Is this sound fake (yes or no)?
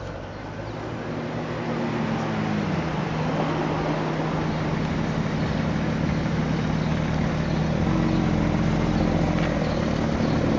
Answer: no